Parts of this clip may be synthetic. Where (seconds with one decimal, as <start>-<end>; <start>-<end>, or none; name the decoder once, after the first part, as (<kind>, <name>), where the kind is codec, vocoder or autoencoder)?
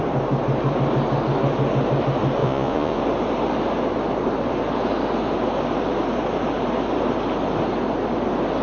2.4-3.0 (vocoder, Vocos)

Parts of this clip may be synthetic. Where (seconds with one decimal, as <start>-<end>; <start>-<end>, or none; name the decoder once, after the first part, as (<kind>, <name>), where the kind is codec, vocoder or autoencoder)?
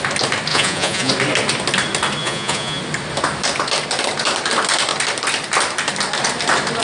0.5-1.1 (vocoder, Vocos); 2.2-2.8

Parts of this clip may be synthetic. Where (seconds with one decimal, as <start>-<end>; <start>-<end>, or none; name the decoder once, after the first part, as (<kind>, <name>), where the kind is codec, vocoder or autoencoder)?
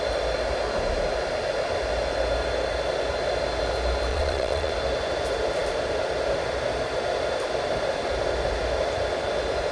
4.1-4.7 (vocoder, Vocos)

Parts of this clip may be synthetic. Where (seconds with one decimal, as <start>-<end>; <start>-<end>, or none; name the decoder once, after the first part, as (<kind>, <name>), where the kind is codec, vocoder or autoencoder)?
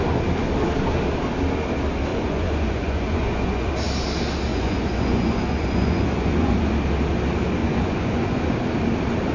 2.1-3.7 (vocoder, Vocos); 4.5-6.7; 7.6-8.4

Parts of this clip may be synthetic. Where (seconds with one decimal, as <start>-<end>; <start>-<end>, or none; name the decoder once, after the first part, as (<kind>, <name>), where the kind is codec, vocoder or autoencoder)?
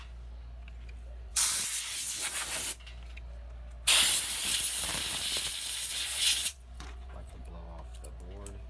5.9-7.5 (vocoder, Vocos)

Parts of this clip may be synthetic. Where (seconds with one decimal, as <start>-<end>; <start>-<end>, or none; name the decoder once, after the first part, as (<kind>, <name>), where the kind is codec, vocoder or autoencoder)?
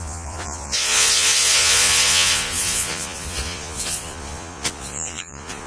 0.0-5.7 (vocoder, Vocos)